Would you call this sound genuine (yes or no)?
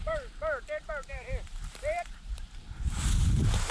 no